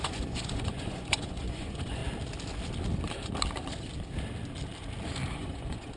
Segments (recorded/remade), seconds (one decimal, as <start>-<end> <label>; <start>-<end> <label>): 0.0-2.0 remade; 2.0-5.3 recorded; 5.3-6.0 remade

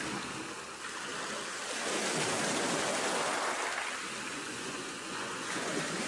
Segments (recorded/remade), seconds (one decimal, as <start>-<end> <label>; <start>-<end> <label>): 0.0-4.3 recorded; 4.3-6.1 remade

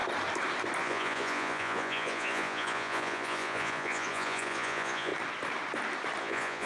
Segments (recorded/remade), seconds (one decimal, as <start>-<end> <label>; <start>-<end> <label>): 0.0-0.8 recorded; 0.8-5.1 remade; 5.1-6.2 recorded; 6.2-6.7 remade